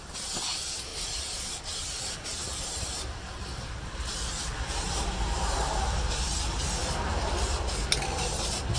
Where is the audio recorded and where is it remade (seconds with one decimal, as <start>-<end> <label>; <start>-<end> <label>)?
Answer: 0.0-0.9 recorded; 0.9-6.0 remade; 6.0-6.8 recorded; 6.8-7.3 remade; 7.3-8.8 recorded